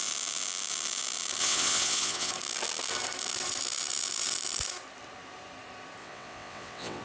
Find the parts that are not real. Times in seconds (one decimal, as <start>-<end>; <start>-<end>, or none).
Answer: 1.4-2.3; 6.0-7.0